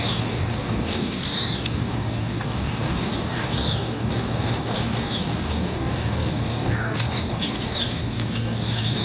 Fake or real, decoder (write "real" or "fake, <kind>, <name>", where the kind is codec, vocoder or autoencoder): fake, codec, DAC